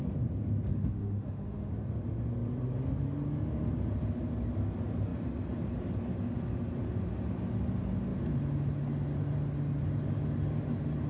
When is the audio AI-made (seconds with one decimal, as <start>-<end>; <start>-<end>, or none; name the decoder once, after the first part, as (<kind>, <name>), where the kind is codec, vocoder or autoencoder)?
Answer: 0.7-1.7 (autoencoder, DAC-VAE)